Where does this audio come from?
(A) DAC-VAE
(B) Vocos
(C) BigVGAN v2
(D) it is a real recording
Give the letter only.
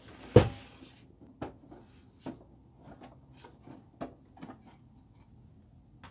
D